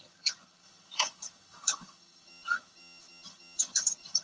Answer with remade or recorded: remade